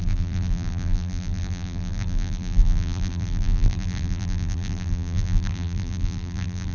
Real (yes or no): no